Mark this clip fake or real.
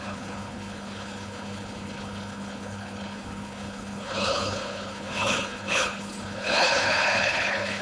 fake